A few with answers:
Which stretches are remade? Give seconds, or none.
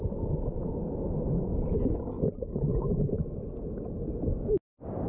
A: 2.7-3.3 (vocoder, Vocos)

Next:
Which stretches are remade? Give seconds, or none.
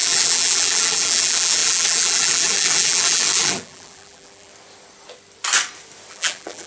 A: 0.0-4.5 (vocoder, BigVGAN v2); 6.1-6.7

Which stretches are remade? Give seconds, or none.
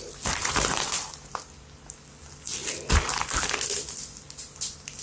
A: 0.4-1.3 (vocoder, BigVGAN v2)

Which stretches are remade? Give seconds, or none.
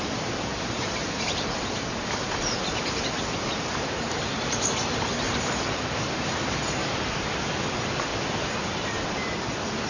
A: 0.0-6.8 (vocoder, BigVGAN v2); 7.6-8.1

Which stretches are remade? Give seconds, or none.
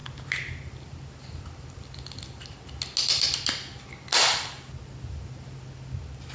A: none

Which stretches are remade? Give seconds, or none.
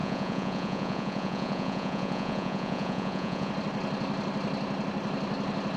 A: 0.0-3.5 (vocoder, Vocos)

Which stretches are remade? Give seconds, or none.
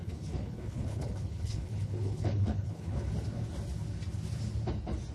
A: 0.0-3.1 (codec, HILCodec)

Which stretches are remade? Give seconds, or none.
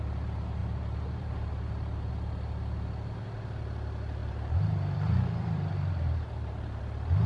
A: 0.6-2.1 (vocoder, BigVGAN v2); 4.2-6.8